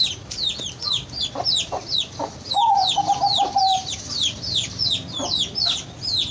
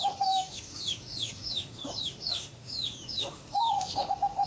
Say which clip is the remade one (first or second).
second